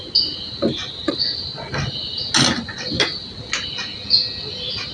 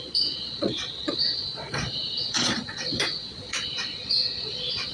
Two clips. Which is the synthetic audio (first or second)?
second